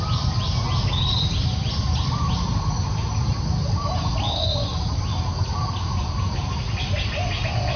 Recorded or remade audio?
recorded